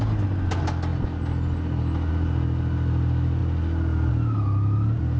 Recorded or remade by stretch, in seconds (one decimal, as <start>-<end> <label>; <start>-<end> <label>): 0.0-5.2 recorded